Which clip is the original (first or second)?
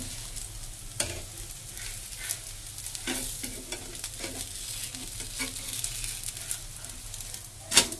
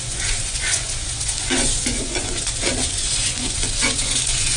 first